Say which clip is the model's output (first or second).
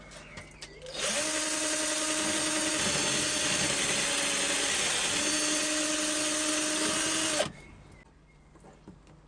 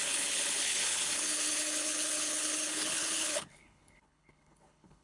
second